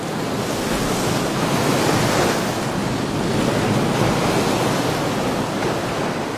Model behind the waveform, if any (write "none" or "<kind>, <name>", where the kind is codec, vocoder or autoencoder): none